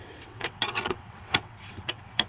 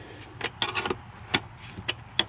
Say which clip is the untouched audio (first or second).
second